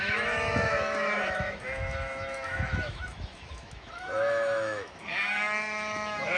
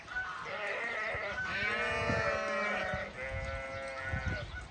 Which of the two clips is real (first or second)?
second